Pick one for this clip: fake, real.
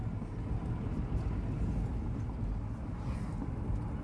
real